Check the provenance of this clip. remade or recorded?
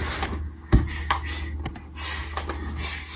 recorded